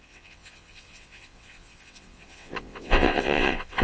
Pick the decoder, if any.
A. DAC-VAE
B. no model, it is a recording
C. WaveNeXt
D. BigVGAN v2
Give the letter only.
C